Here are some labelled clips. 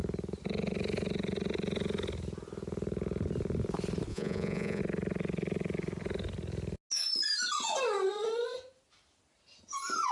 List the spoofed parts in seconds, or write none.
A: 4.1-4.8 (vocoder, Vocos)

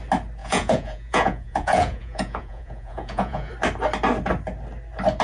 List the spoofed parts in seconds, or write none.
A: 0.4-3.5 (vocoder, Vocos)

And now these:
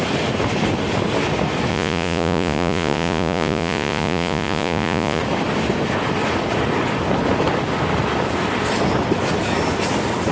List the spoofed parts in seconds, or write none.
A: 1.7-5.2 (vocoder, Vocos)